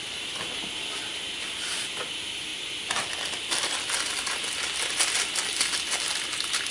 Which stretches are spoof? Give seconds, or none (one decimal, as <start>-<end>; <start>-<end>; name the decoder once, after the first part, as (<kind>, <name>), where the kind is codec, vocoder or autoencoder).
none